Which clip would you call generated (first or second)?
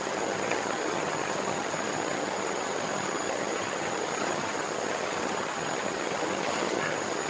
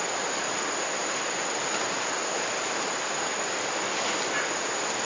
first